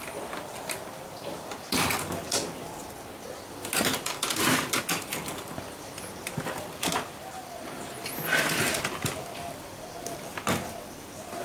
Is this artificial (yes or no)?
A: yes